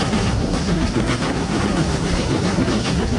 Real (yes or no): no